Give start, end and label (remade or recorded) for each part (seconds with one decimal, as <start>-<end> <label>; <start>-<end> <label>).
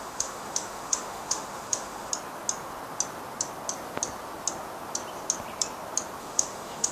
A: 0.0-2.1 remade; 2.1-6.2 recorded; 6.2-6.9 remade